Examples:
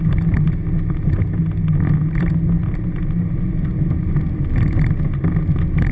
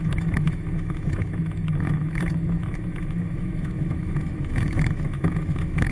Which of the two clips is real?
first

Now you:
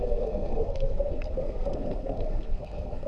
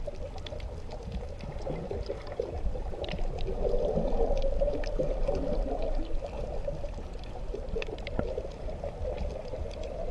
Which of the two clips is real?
second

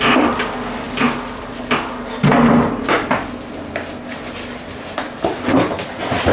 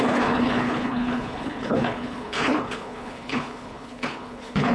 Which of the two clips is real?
first